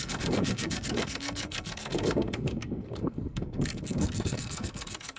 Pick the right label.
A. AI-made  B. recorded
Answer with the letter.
A